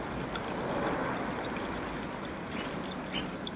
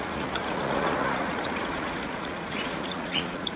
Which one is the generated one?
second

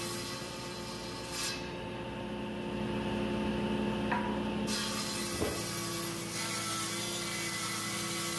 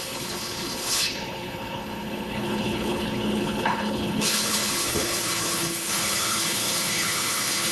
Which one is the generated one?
second